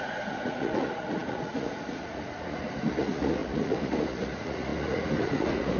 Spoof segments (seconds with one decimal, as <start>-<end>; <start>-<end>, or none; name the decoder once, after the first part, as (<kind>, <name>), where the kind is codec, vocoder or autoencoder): 0.0-5.8 (vocoder, Vocos)